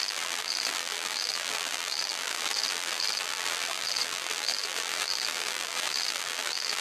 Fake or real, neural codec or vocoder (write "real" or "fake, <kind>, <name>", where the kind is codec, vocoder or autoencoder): fake, vocoder, BigVGAN v2